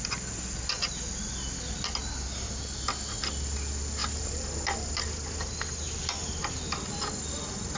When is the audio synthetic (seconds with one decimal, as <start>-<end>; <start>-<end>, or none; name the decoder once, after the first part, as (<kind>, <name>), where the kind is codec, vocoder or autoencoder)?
4.0-5.0 (vocoder, BigVGAN v2)